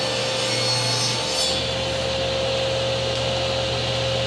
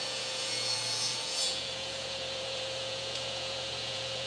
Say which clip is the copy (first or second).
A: second